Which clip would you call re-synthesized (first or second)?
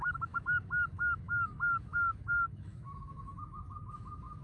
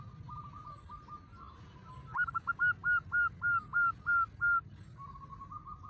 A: first